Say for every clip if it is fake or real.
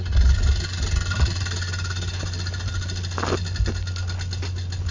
real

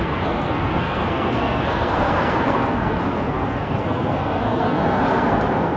fake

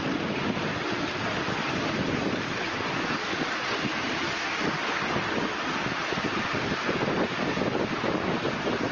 real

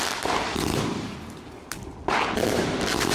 real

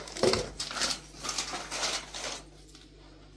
real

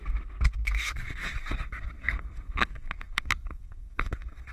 fake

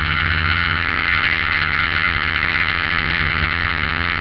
fake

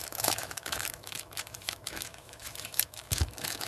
fake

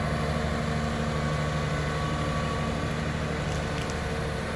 real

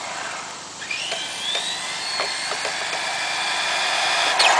real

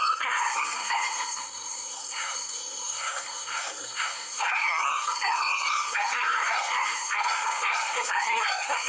fake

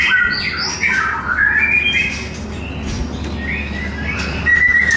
real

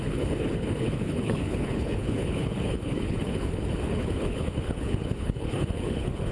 fake